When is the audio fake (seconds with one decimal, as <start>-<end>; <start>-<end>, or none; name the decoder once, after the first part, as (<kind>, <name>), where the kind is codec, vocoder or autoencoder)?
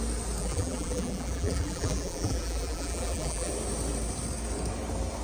0.4-3.5 (vocoder, BigVGAN v2)